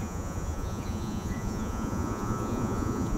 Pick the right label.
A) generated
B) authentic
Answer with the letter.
A